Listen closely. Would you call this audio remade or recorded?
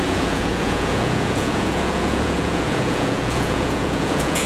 remade